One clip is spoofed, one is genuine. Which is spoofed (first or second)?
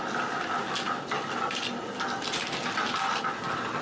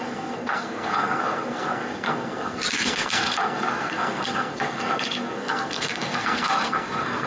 second